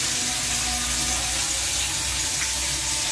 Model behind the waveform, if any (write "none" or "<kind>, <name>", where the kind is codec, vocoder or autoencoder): none